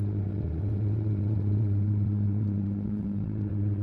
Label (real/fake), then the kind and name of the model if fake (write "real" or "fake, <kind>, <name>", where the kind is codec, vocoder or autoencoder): fake, vocoder, WaveNeXt